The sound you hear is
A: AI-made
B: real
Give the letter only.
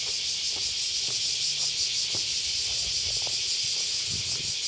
B